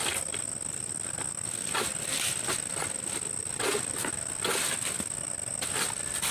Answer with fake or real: real